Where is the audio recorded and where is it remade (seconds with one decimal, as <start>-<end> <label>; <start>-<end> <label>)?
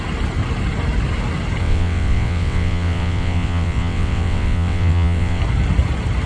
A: 0.0-1.6 recorded; 1.6-5.4 remade; 5.4-6.3 recorded